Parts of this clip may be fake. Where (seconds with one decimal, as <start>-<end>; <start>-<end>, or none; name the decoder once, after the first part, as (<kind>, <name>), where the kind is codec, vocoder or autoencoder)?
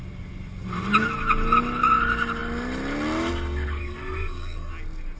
3.8-4.7 (codec, SNAC)